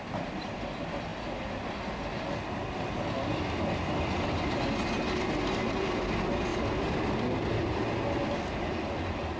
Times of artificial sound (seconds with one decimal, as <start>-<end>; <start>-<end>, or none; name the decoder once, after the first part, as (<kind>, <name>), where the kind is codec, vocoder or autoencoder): none

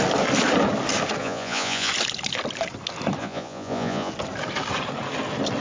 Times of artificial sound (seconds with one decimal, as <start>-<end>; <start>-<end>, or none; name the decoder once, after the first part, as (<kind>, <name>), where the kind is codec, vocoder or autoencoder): 1.2-1.9 (vocoder, Vocos); 3.2-4.1